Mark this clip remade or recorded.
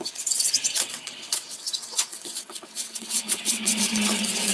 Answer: remade